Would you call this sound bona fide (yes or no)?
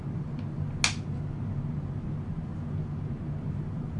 yes